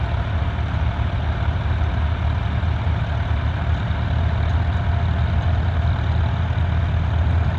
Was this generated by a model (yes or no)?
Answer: no